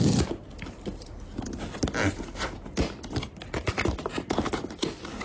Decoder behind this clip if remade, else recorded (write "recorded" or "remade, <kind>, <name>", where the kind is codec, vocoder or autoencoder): recorded